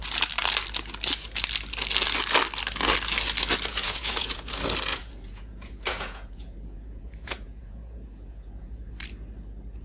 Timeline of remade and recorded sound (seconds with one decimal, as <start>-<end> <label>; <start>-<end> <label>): 0.0-3.7 recorded; 3.7-4.5 remade; 4.5-4.9 recorded; 4.9-8.9 remade; 8.9-9.8 recorded

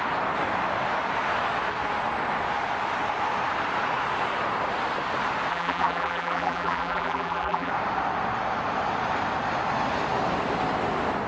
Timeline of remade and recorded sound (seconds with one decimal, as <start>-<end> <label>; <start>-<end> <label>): 0.0-5.5 recorded; 5.5-7.7 remade; 7.7-11.3 recorded

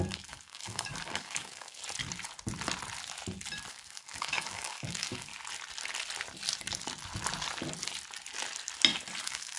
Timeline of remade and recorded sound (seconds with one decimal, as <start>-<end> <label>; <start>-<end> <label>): 0.0-1.8 remade; 1.8-3.7 recorded; 3.7-5.3 remade; 5.3-9.2 recorded; 9.2-9.6 remade

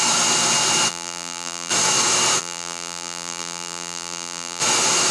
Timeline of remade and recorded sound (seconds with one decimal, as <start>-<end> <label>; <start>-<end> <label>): 0.0-0.9 recorded; 0.9-1.7 remade; 1.7-2.4 recorded; 2.4-4.6 remade; 4.6-5.1 recorded

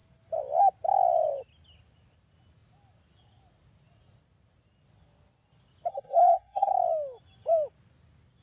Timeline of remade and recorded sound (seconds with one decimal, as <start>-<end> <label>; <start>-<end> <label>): 0.0-5.9 recorded; 5.9-6.7 remade; 6.7-8.4 recorded

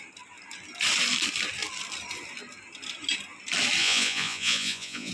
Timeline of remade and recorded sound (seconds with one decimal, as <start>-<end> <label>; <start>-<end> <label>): 0.0-3.8 recorded; 3.8-5.1 remade

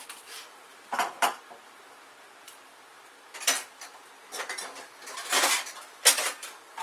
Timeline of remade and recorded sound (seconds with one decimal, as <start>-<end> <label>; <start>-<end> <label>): 0.0-0.7 recorded; 0.7-4.8 remade; 4.8-6.8 recorded